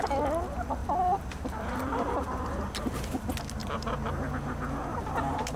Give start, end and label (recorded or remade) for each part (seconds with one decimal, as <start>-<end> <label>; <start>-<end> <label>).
0.0-0.8 recorded; 0.8-2.4 remade; 2.4-3.6 recorded; 3.6-4.3 remade; 4.3-4.9 recorded; 4.9-5.6 remade